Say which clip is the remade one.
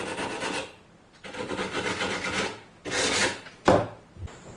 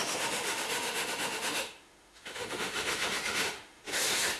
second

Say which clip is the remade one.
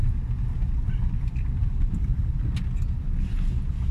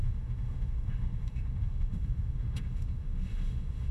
second